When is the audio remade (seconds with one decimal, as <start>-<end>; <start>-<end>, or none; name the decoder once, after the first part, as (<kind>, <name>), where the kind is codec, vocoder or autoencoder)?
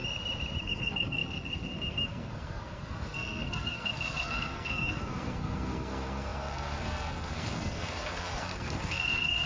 0.6-9.5 (codec, SNAC)